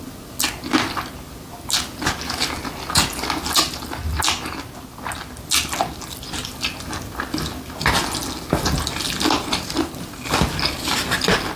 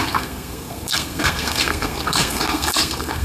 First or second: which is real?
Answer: first